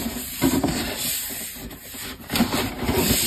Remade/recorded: remade